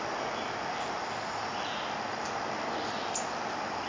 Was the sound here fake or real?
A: real